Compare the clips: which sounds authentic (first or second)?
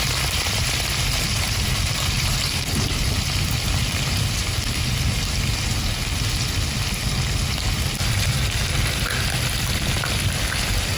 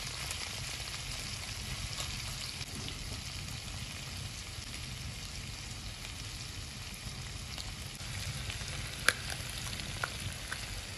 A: second